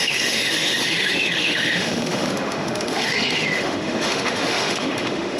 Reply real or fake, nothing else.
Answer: fake